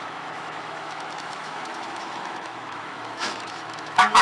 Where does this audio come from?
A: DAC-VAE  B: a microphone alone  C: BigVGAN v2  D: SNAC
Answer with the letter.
A